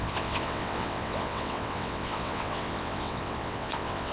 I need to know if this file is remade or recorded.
remade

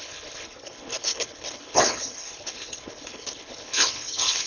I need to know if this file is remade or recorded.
remade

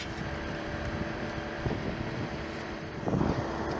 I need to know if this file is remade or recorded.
remade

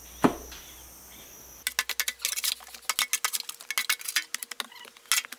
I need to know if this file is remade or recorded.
recorded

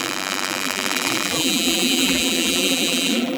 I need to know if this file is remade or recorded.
remade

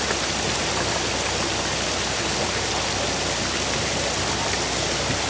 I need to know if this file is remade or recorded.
recorded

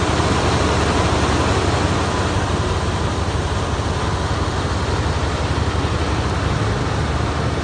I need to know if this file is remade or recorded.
recorded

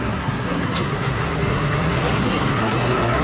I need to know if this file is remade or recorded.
remade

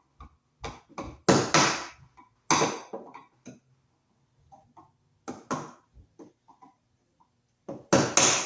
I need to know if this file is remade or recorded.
recorded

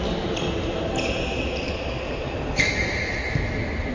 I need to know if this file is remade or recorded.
recorded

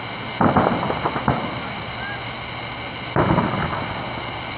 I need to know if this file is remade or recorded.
recorded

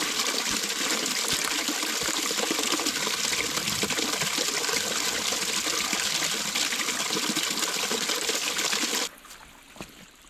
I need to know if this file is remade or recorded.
recorded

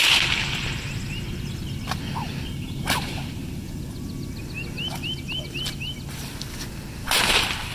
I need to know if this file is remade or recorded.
recorded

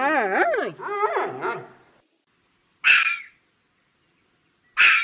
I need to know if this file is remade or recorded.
recorded